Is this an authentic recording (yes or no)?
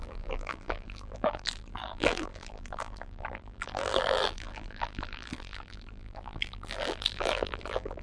no